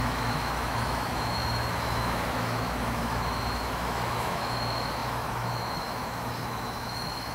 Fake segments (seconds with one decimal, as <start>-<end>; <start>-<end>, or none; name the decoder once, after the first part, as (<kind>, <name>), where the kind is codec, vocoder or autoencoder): 0.0-7.3 (autoencoder, DAC-VAE)

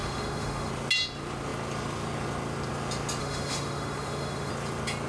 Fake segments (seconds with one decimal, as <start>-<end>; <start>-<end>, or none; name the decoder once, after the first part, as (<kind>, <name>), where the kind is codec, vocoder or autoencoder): 0.0-0.7 (autoencoder, DAC-VAE); 3.2-4.5